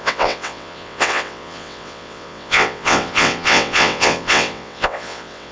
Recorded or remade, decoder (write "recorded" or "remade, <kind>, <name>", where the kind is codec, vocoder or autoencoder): remade, vocoder, WaveNeXt